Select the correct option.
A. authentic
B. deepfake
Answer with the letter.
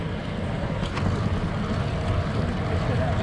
A